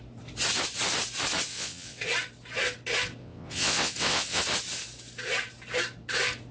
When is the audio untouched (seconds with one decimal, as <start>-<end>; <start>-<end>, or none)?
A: 0.0-1.5; 2.0-3.2; 4.4-6.5